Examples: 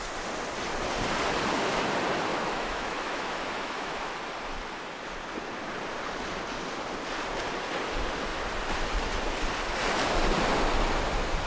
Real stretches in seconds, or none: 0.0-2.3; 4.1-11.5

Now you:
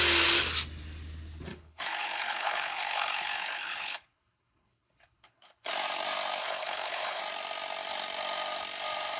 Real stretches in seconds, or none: 0.0-1.5; 5.7-6.4; 7.2-9.2